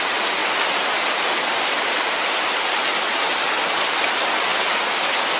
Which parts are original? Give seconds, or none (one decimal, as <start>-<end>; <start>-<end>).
0.0-5.4